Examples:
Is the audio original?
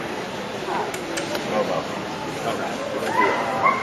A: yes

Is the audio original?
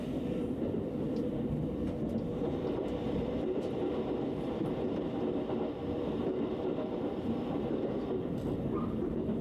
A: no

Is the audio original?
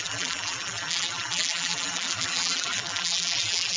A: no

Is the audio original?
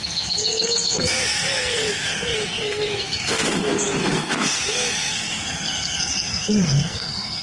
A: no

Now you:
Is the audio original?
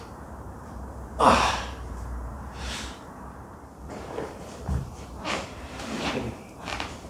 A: no